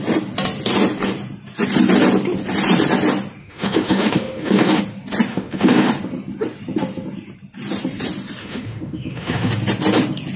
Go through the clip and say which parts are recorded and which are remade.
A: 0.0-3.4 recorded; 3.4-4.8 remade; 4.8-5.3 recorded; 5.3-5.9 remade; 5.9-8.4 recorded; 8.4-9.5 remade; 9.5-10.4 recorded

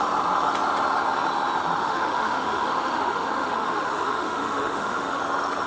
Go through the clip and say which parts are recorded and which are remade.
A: 0.0-1.8 recorded; 1.8-5.2 remade; 5.2-5.7 recorded

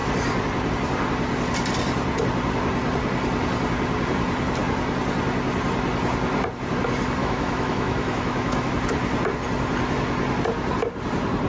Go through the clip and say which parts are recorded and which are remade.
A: 0.0-7.2 recorded; 7.2-8.7 remade; 8.7-11.5 recorded